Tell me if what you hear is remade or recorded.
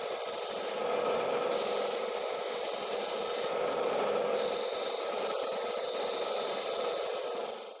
recorded